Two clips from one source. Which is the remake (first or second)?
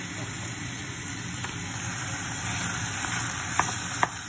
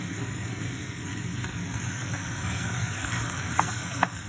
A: second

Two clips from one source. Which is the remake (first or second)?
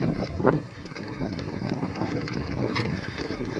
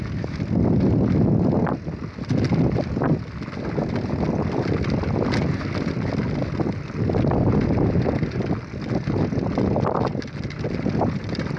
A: first